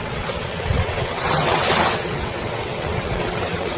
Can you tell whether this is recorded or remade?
remade